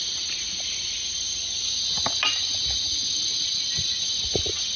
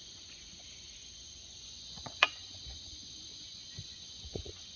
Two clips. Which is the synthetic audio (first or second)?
second